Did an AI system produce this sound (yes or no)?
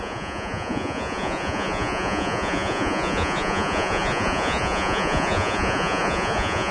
yes